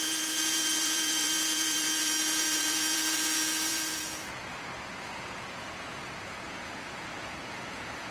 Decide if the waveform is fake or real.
fake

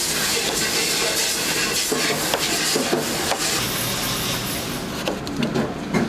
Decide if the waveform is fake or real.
real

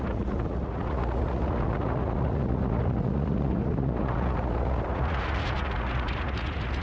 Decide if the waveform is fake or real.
fake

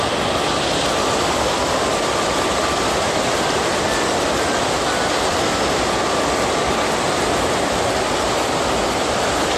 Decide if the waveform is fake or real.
real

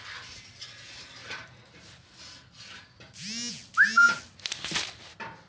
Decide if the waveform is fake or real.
real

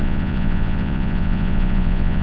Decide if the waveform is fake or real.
fake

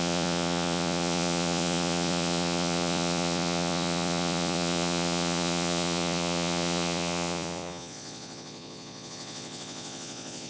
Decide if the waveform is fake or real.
fake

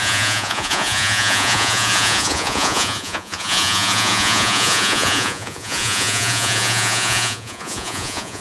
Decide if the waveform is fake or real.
fake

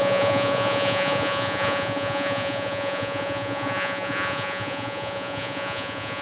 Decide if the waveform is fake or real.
fake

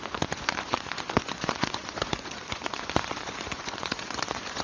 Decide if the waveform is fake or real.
fake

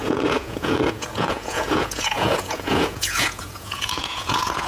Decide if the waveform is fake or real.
fake